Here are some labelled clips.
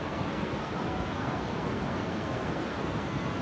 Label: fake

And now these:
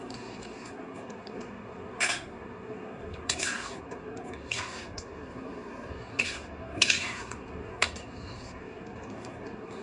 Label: fake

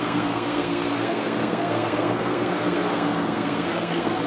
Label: fake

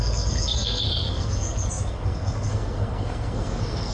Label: fake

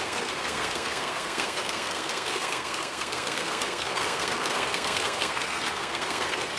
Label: fake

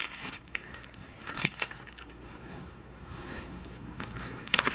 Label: fake